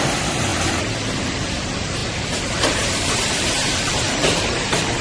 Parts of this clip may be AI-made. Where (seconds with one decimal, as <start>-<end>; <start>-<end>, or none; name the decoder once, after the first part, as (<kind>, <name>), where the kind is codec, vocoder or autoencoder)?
0.0-0.5 (vocoder, BigVGAN v2); 1.2-5.0